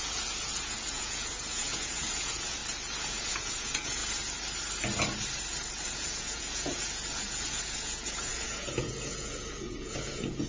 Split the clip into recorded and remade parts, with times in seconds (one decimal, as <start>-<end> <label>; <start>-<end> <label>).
0.0-2.6 remade; 2.6-3.1 recorded; 3.1-4.0 remade; 4.0-5.7 recorded; 5.7-10.5 remade